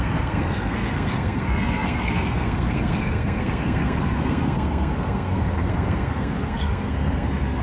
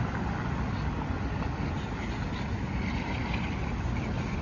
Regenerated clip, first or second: first